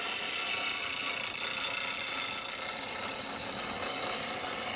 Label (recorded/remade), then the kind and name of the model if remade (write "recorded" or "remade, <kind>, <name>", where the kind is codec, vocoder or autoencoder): recorded